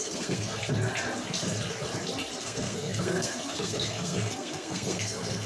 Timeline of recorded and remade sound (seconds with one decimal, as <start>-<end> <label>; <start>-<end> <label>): 0.0-0.6 remade; 0.6-2.4 recorded; 2.4-5.5 remade